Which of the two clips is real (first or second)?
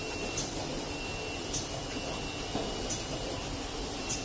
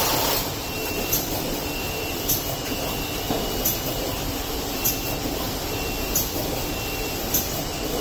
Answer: first